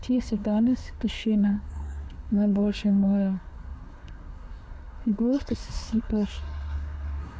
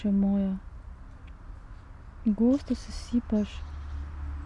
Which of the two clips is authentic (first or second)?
second